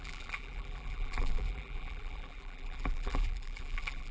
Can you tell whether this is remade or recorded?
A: remade